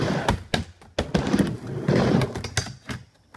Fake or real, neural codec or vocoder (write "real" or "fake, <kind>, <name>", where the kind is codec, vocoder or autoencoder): real